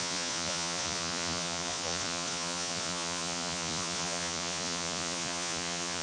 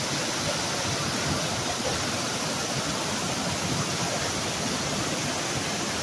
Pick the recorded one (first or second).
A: second